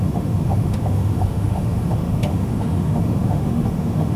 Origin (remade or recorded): remade